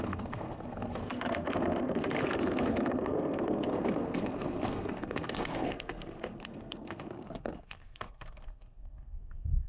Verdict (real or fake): fake